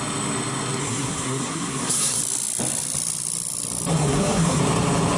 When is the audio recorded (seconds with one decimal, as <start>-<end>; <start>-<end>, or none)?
0.0-0.8; 2.2-3.9; 4.6-5.2